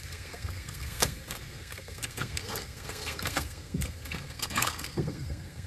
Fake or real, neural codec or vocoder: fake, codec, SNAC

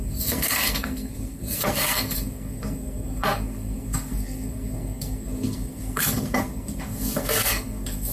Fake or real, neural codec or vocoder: fake, codec, SNAC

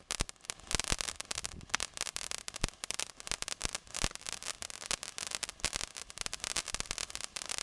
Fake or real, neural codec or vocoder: real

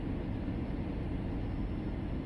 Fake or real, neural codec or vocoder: real